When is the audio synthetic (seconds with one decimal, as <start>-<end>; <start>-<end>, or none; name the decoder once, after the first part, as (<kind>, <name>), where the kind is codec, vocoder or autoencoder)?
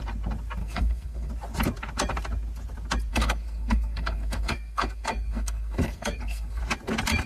0.6-1.3 (codec, SNAC); 3.1-6.6